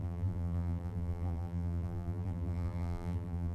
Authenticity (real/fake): fake